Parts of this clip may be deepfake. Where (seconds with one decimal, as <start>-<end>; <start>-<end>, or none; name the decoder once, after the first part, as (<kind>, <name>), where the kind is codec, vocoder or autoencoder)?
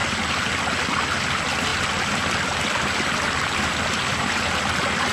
none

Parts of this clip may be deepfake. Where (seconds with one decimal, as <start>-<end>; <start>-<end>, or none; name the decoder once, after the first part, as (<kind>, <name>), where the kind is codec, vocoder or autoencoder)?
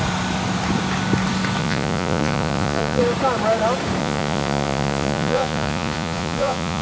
1.6-3.0 (vocoder, Vocos); 4.0-6.8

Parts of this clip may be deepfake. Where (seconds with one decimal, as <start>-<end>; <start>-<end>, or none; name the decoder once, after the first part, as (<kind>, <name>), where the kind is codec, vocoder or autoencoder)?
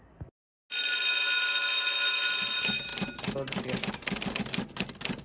none